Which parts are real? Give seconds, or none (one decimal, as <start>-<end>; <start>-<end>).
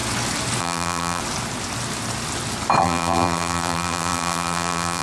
0.0-0.6; 1.2-2.8